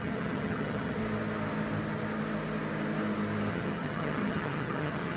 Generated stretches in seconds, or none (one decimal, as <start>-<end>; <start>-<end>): 0.0-1.0; 3.5-5.2